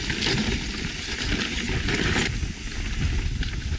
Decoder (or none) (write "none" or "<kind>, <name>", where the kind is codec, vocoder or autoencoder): none